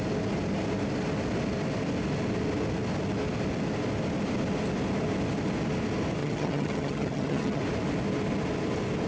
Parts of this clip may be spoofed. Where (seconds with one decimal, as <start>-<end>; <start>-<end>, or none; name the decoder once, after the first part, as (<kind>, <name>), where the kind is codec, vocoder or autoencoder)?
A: 6.2-7.6 (vocoder, HiFi-GAN)